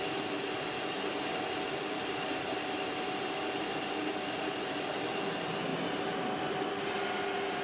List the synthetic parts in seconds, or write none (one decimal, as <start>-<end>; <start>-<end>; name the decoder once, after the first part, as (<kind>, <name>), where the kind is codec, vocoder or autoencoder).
none